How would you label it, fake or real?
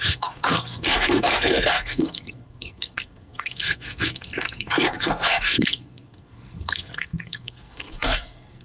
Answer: fake